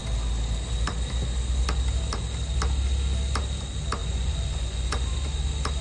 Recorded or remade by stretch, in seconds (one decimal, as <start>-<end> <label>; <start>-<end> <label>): 0.0-4.0 recorded; 4.0-5.1 remade; 5.1-5.8 recorded